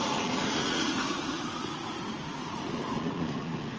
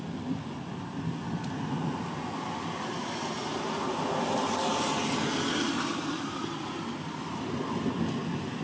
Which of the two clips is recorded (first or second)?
second